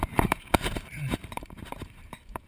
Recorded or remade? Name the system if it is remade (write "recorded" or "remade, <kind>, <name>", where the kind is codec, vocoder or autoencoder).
remade, vocoder, BigVGAN v2